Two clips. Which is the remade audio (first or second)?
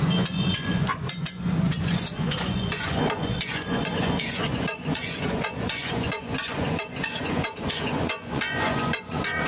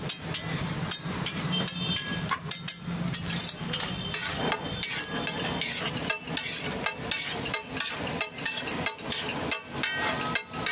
first